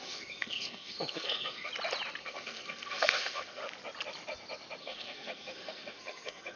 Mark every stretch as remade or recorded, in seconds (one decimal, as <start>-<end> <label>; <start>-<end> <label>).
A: 0.0-1.7 remade; 1.7-2.2 recorded; 2.2-3.6 remade; 3.6-4.8 recorded; 4.8-6.6 remade